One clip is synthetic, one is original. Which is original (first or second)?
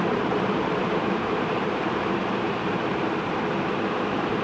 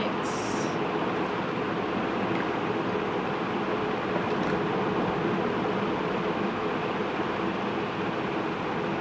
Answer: second